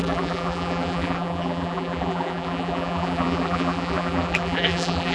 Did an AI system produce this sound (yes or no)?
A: yes